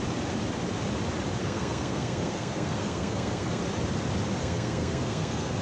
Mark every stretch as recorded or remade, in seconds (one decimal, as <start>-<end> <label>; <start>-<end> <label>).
0.0-1.4 recorded; 1.4-3.6 remade; 3.6-4.4 recorded; 4.4-5.6 remade